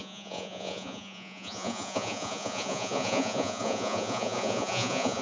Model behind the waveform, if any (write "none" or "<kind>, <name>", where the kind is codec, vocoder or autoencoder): vocoder, Vocos